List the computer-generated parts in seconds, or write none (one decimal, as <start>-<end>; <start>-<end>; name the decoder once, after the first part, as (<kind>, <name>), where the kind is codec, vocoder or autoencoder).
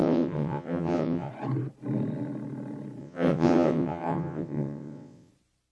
0.0-1.3 (vocoder, WaveNeXt); 3.0-5.3